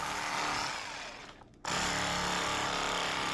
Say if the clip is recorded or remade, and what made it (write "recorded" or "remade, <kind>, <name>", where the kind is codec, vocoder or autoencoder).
recorded